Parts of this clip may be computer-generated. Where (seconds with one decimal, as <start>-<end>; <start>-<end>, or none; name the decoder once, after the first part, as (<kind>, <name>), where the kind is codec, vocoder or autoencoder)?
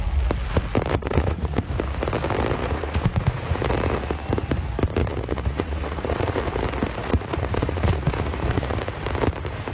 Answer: 0.9-1.6 (vocoder, Vocos); 2.6-3.6; 5.0-6.4; 7.0-8.8